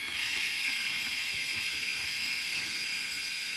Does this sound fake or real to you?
fake